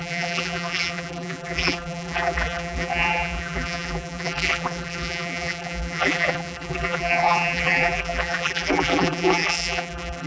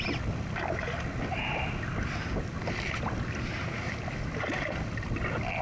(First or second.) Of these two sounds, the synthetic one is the first